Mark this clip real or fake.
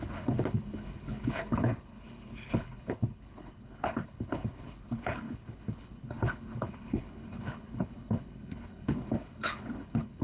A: fake